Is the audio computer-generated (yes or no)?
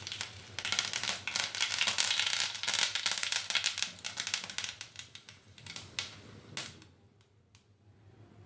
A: no